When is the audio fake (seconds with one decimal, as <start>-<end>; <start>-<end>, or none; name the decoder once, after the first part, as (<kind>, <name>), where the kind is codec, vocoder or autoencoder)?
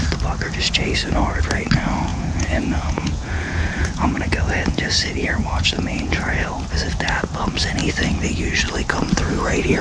2.1-6.5 (vocoder, Vocos)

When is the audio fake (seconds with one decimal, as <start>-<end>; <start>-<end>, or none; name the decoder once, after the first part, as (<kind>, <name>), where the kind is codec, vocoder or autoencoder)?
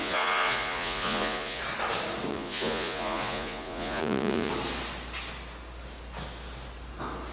0.0-1.6 (vocoder, Vocos); 2.3-4.5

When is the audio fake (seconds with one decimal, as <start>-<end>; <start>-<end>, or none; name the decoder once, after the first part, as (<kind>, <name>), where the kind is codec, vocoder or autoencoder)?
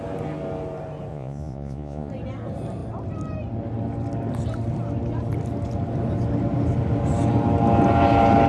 1.1-2.1 (vocoder, Vocos)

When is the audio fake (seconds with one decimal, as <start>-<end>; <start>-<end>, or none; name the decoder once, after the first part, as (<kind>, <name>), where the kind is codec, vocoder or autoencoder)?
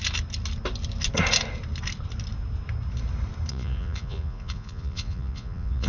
3.5-5.9 (vocoder, Vocos)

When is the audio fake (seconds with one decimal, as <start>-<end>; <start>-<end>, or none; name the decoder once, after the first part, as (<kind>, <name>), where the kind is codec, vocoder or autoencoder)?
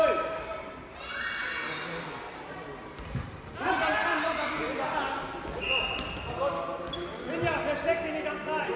none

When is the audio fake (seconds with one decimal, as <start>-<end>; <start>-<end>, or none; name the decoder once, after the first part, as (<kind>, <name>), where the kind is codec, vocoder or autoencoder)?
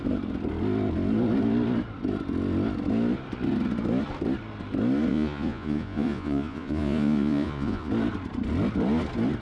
5.1-7.9 (vocoder, Vocos)